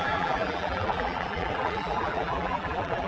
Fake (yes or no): yes